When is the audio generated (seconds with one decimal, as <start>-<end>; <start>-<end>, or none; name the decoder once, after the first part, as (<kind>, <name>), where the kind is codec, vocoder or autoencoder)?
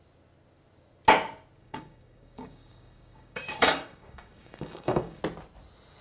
1.6-5.2 (codec, DAC)